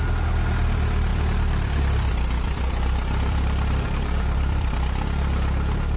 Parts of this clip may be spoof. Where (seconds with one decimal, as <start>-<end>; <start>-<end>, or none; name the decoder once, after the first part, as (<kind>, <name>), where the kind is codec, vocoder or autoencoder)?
1.1-4.7 (vocoder, BigVGAN v2)